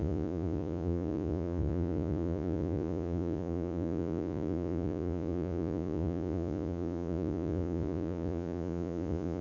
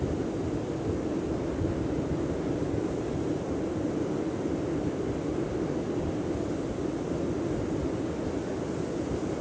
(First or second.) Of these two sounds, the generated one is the first